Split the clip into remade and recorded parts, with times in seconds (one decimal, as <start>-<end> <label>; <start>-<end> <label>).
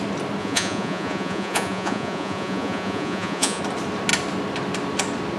0.0-0.4 recorded; 0.4-3.6 remade; 3.6-5.4 recorded